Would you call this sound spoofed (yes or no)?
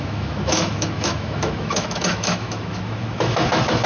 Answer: yes